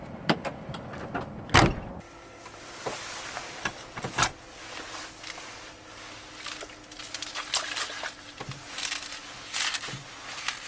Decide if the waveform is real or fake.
real